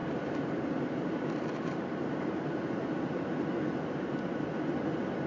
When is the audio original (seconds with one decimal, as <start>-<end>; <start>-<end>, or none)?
3.2-5.3